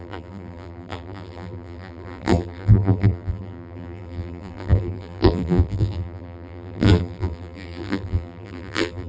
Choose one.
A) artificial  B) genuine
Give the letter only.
A